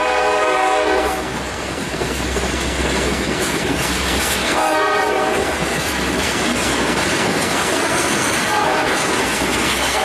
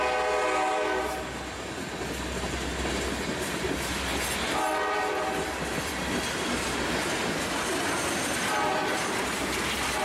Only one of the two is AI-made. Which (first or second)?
first